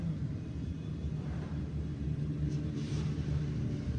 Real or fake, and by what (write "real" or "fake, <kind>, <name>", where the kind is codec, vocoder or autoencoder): fake, vocoder, BigVGAN v2